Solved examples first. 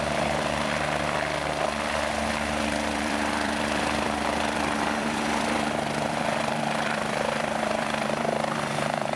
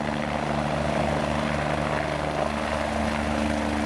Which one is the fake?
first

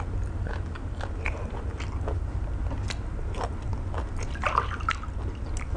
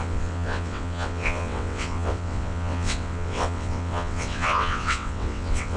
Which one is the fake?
second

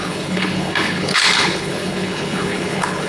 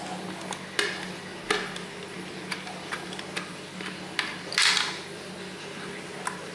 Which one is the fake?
first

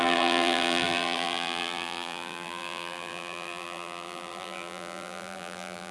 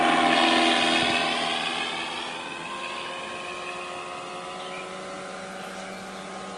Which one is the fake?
first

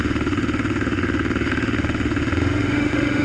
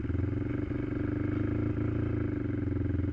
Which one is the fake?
first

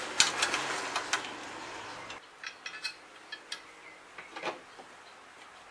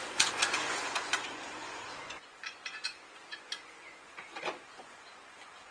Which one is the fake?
second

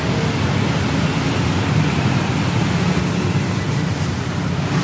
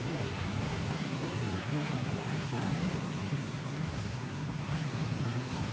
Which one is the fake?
second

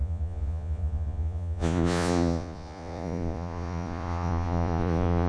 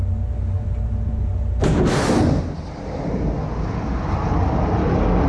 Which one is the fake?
first